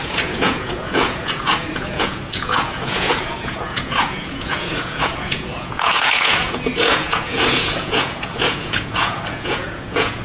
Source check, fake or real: fake